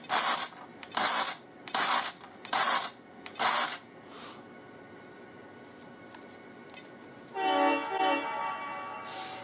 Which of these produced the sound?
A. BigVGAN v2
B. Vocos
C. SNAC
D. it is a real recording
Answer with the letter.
D